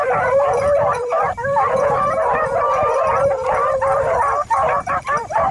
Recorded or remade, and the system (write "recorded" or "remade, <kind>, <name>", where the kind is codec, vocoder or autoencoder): remade, vocoder, BigVGAN v2